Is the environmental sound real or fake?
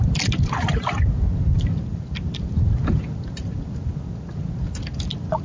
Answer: real